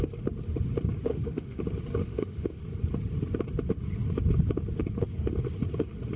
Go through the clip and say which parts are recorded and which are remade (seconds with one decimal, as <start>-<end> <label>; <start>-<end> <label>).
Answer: 0.0-1.1 recorded; 1.1-1.6 remade; 1.6-2.0 recorded; 2.0-2.6 remade; 2.6-6.2 recorded